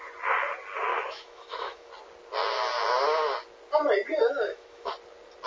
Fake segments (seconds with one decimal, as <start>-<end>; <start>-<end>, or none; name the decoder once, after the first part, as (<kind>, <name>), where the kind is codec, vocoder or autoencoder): 0.9-1.9 (autoencoder, DAC-VAE); 4.2-4.9